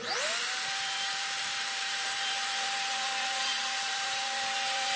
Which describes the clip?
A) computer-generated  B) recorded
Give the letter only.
A